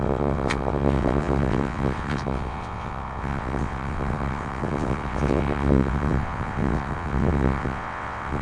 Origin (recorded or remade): remade